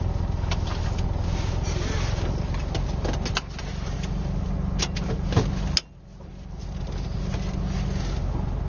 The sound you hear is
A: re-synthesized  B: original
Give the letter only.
B